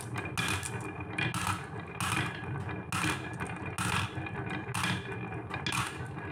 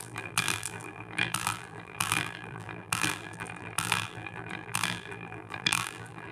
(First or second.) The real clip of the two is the first